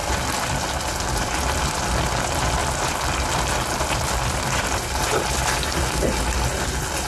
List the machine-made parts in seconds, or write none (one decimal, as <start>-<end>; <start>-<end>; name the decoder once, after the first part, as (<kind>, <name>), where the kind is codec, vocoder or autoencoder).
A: 0.0-1.7 (vocoder, BigVGAN v2); 2.6-5.2